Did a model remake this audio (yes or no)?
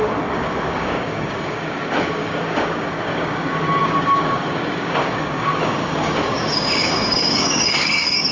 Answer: yes